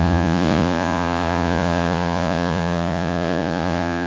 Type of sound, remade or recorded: remade